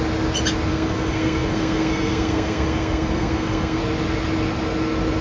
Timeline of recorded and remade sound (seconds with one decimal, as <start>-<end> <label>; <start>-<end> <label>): 0.0-0.7 recorded; 0.7-3.8 remade; 3.8-5.2 recorded